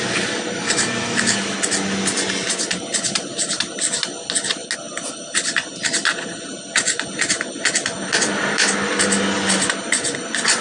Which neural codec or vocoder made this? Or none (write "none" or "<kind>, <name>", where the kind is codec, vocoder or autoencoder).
none